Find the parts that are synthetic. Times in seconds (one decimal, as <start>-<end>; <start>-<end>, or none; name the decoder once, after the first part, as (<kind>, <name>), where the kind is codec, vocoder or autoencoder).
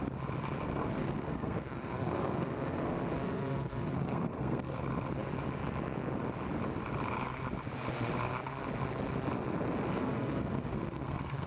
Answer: 0.8-4.8 (codec, SNAC); 9.9-11.5